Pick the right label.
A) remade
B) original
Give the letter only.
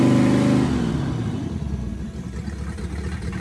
B